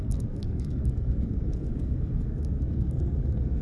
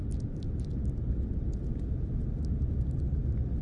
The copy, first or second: first